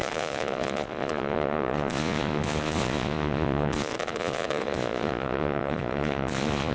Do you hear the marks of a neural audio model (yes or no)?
yes